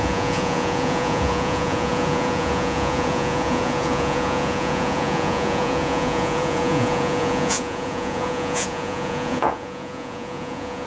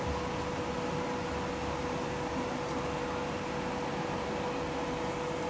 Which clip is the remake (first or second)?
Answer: first